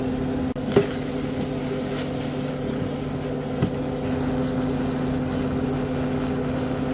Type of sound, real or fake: real